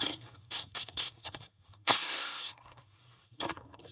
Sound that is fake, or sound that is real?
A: fake